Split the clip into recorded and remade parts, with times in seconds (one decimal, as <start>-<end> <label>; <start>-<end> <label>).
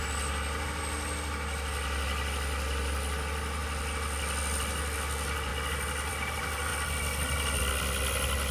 0.0-8.5 recorded